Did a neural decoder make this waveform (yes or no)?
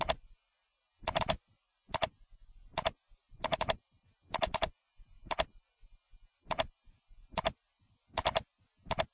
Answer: no